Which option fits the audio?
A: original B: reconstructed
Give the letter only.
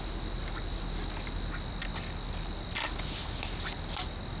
A